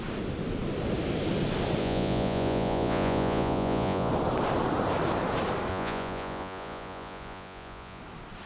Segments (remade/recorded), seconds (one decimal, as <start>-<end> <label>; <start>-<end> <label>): 0.0-1.8 recorded; 1.8-4.1 remade; 4.1-5.7 recorded; 5.7-8.0 remade; 8.0-8.5 recorded